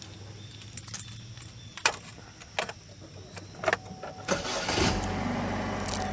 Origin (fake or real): real